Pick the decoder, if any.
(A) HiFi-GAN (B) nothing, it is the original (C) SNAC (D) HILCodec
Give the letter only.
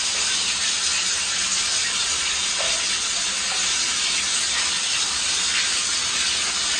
B